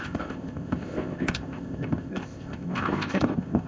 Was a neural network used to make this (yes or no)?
yes